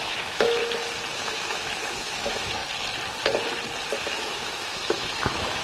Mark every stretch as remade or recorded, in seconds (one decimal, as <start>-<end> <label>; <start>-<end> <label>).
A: 0.0-0.6 remade; 0.6-1.1 recorded; 1.1-2.6 remade; 2.6-4.0 recorded; 4.0-5.6 remade